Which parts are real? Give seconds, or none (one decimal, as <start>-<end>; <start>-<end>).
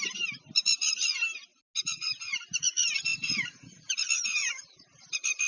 0.0-5.5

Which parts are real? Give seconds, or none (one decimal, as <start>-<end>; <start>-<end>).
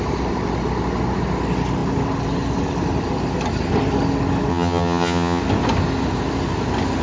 0.0-4.5; 5.4-7.0